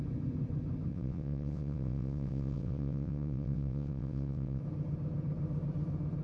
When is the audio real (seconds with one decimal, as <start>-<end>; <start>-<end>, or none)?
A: 0.0-0.9; 4.6-6.2